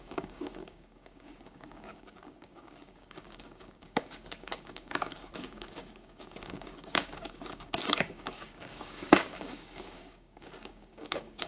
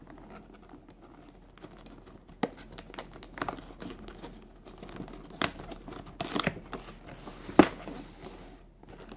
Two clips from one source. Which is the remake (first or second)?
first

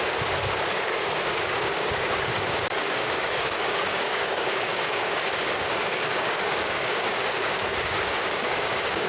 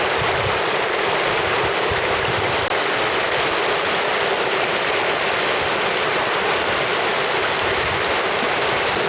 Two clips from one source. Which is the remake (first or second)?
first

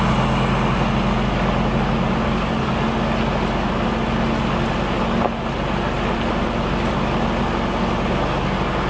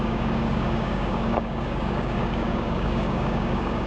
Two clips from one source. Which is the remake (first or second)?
second